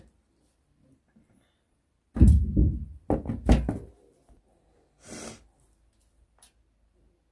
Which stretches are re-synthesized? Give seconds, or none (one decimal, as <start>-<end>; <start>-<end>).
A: none